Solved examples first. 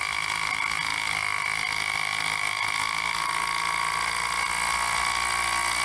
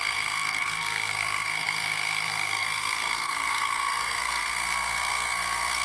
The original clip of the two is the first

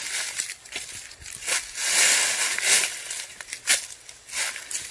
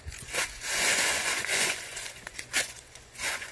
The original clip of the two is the first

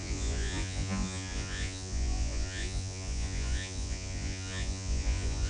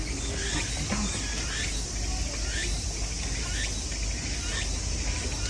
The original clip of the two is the second